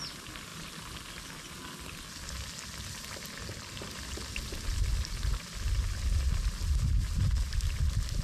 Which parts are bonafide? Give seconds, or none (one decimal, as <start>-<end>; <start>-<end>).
0.0-8.2